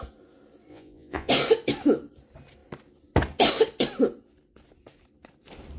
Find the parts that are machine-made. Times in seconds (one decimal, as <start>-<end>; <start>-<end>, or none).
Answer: 0.7-1.3